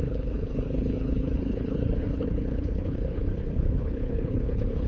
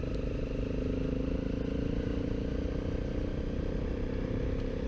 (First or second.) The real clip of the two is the second